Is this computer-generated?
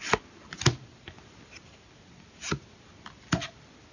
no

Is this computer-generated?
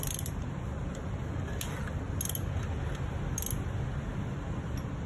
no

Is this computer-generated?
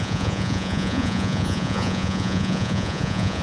yes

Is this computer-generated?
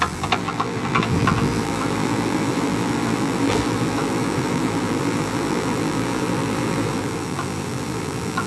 yes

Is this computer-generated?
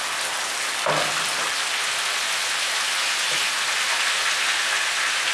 no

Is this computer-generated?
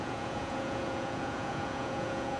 yes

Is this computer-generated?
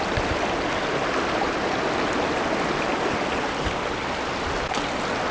no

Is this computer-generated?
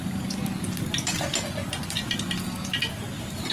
no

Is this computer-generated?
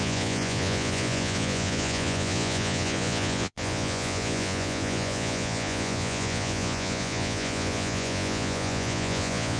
yes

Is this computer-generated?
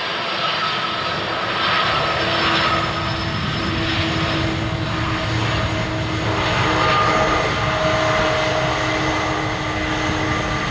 no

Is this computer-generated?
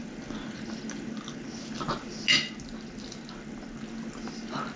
no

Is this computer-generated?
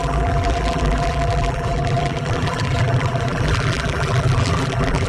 yes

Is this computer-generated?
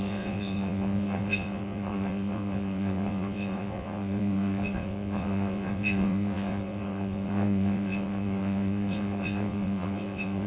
yes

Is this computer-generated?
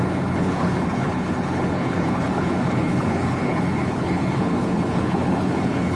yes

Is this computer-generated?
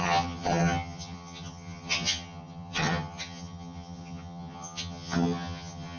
yes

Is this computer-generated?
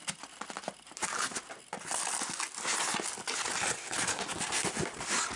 no